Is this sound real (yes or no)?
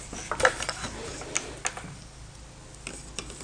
yes